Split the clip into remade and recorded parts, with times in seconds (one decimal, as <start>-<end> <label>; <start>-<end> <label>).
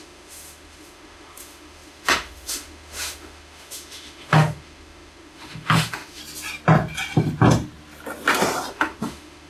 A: 0.0-6.2 remade; 6.2-8.7 recorded; 8.7-9.5 remade